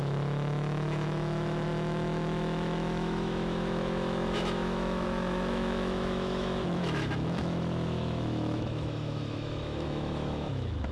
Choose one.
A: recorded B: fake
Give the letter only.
B